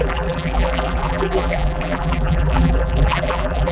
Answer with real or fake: fake